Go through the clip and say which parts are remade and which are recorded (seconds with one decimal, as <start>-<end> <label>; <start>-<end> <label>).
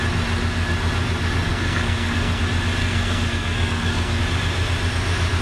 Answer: 0.0-1.5 recorded; 1.5-2.4 remade; 2.4-2.8 recorded; 2.8-4.2 remade; 4.2-5.4 recorded